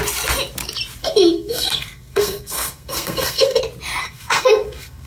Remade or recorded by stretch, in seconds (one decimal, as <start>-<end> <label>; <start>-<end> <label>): 0.0-1.0 recorded; 1.0-3.6 remade; 3.6-4.0 recorded; 4.0-5.1 remade